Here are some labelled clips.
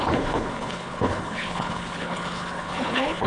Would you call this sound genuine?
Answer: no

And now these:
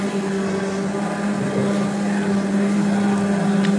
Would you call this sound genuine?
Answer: yes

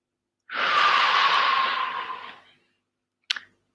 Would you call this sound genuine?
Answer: yes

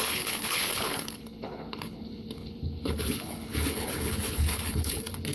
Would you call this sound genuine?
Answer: no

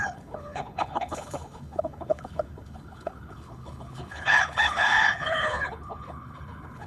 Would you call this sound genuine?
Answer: no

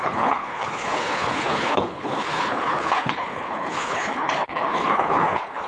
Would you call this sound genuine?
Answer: no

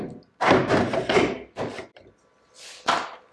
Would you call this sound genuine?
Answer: yes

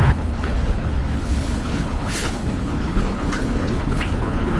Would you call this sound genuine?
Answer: no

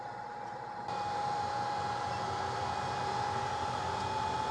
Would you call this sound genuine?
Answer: yes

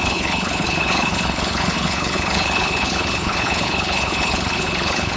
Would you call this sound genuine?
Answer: no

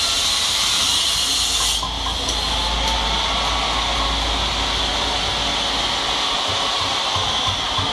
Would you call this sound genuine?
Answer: yes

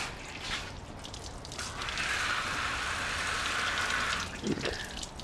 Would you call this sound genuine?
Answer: yes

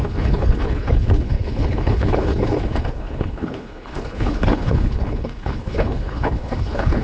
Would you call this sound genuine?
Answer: no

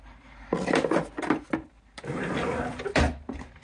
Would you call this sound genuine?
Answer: yes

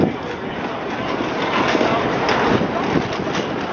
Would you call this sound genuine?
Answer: yes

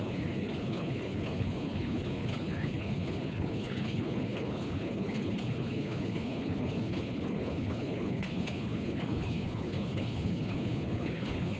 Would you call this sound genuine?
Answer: no